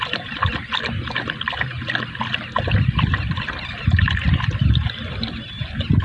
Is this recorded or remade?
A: recorded